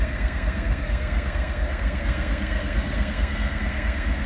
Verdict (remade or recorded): remade